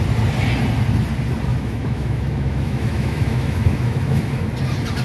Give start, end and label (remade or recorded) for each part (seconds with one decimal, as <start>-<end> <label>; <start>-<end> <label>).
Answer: 0.0-1.5 recorded; 1.5-4.5 remade; 4.5-5.0 recorded